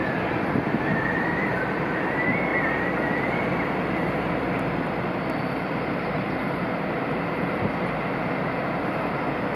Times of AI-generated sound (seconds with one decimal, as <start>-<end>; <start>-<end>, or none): 2.5-6.4